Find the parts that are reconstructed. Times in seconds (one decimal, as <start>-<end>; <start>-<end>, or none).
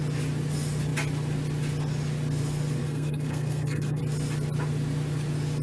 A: 2.8-4.0